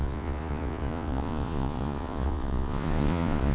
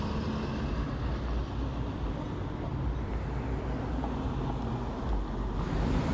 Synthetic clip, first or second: first